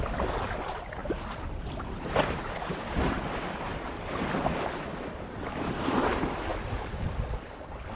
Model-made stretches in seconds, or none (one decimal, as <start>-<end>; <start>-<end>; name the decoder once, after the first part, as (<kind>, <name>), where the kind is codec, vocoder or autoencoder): 3.7-5.8 (vocoder, BigVGAN v2)